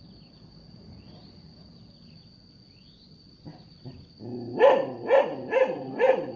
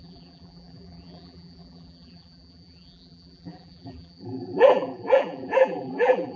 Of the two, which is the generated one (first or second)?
second